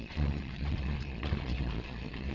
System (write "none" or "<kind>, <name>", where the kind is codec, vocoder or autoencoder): vocoder, Vocos